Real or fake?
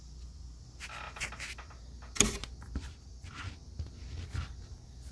real